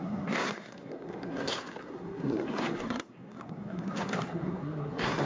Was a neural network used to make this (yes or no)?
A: yes